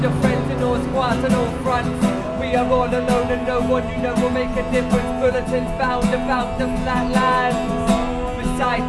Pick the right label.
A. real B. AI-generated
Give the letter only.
A